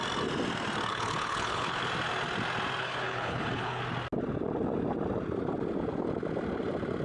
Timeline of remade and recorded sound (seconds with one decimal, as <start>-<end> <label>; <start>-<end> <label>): 0.0-0.9 recorded; 0.9-1.8 remade; 1.8-2.8 recorded; 2.8-3.8 remade; 3.8-7.0 recorded